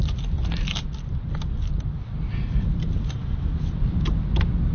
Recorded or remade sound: recorded